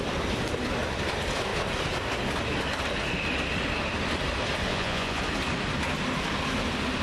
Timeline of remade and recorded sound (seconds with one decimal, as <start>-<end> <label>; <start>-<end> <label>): 0.0-4.7 recorded; 4.7-5.2 remade; 5.2-7.0 recorded